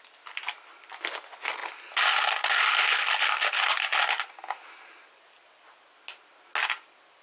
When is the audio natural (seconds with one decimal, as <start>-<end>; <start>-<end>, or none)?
0.0-7.2